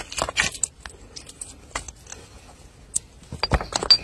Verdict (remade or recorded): recorded